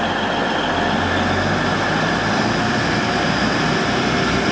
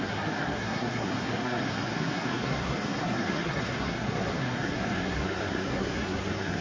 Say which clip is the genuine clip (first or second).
first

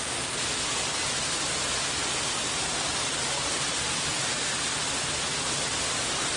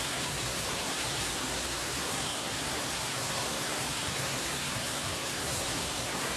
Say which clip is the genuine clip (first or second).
first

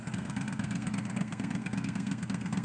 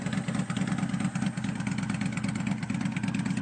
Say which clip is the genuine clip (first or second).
second